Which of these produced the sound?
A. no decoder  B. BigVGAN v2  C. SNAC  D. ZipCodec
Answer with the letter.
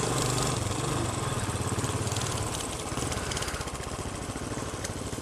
A